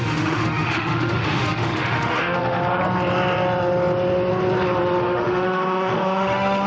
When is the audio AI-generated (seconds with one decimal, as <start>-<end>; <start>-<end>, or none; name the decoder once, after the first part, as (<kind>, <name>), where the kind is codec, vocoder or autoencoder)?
0.0-2.8 (autoencoder, DAC-VAE); 5.0-6.7